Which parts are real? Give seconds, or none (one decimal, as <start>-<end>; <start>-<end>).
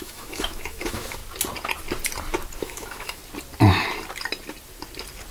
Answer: 1.2-2.6; 3.2-5.3